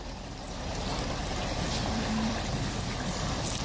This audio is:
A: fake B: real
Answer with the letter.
A